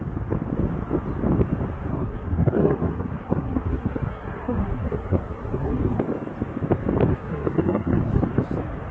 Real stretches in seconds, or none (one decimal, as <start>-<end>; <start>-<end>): 0.0-1.9; 6.0-7.1; 8.2-8.9